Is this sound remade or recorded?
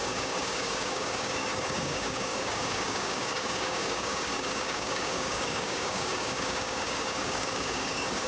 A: remade